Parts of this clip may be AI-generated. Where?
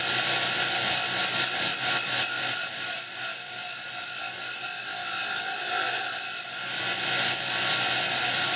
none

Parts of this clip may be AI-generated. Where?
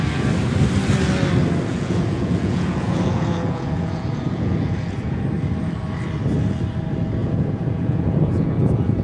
1.7-5.2 (vocoder, Vocos); 7.2-9.0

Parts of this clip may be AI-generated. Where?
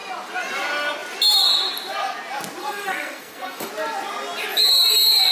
2.6-3.7 (codec, SNAC)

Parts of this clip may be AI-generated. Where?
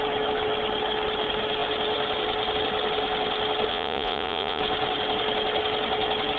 3.7-4.6 (vocoder, Vocos)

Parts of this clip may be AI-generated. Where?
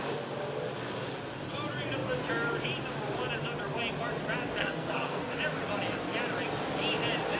4.6-5.4 (codec, SNAC)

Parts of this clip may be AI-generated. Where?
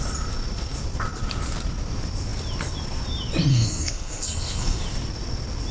3.5-4.8 (codec, SNAC)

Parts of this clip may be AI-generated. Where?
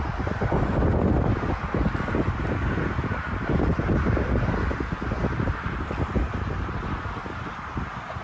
none